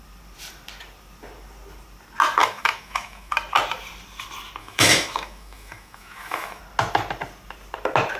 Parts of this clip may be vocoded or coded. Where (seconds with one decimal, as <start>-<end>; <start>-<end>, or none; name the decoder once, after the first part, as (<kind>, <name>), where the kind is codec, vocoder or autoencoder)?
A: 2.4-3.3 (autoencoder, DAC-VAE); 4.6-6.6